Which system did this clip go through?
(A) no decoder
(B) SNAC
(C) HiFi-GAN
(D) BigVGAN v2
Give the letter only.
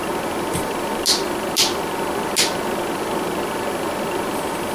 A